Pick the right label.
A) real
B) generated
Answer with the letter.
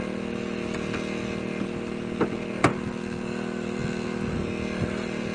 A